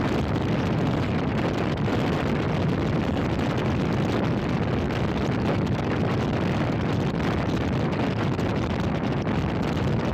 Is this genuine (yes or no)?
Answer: yes